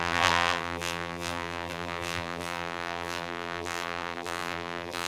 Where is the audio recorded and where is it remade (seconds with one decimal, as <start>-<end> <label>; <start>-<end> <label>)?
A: 0.0-5.1 remade